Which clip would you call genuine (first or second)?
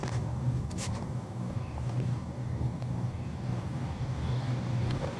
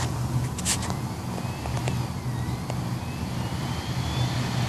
second